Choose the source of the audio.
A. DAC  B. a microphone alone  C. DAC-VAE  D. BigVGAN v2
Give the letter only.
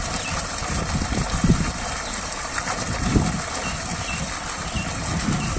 B